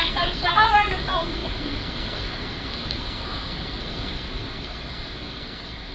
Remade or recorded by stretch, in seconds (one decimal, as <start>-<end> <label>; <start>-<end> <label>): 0.0-5.9 remade